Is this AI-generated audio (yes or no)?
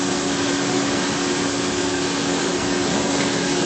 yes